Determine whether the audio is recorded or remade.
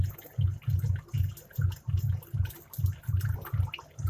recorded